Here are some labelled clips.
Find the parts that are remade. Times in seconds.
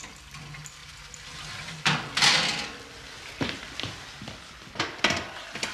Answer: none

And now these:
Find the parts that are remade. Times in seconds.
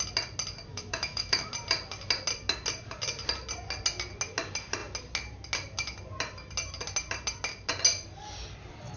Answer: 0.7-1.5 (autoencoder, DAC-VAE)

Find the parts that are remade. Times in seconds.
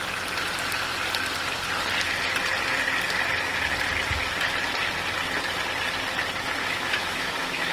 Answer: 6.6-7.7 (autoencoder, DAC-VAE)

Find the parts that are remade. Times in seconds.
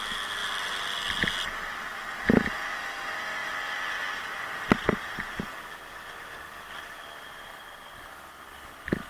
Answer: none